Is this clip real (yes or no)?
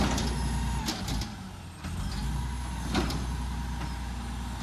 yes